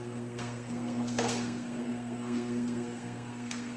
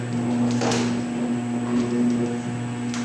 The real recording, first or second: second